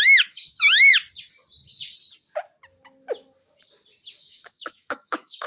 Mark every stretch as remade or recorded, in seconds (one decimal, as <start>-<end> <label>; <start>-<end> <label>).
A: 0.0-0.9 remade; 0.9-4.2 recorded; 4.2-5.5 remade

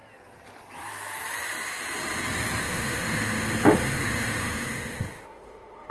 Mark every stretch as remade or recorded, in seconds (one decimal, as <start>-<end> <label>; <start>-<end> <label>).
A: 0.0-2.6 recorded; 2.6-5.9 remade

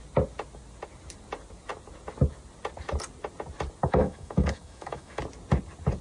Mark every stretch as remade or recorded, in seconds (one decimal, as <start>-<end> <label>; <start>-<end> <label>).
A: 0.0-3.8 recorded; 3.8-5.2 remade; 5.2-6.0 recorded